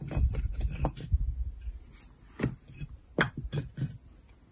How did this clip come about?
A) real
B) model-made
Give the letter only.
A